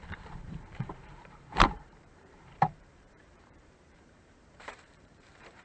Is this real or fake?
fake